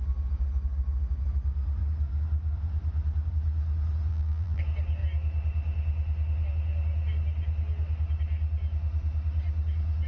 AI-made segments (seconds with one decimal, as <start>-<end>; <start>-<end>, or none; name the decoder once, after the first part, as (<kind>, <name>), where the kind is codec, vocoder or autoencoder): 4.1-4.6 (vocoder, BigVGAN v2)